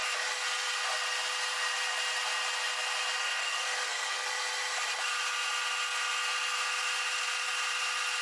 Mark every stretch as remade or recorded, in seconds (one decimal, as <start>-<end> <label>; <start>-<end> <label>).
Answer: 0.0-3.2 recorded; 3.2-4.3 remade; 4.3-8.2 recorded